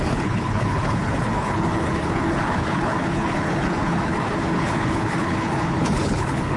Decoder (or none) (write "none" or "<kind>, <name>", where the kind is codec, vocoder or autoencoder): codec, HILCodec